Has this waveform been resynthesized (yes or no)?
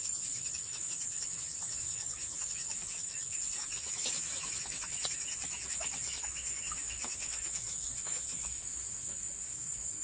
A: yes